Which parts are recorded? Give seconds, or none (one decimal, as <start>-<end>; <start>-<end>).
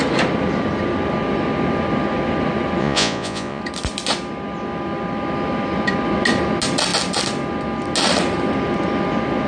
0.0-2.8; 3.6-9.5